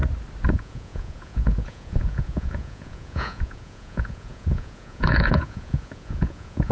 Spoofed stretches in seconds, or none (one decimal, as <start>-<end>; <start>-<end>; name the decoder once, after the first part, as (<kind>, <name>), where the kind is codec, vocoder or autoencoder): 0.5-6.7 (vocoder, Vocos)